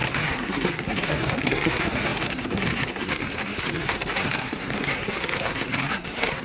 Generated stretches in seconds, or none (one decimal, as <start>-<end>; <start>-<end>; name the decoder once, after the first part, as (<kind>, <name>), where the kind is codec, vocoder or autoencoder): 0.0-6.4 (codec, SNAC)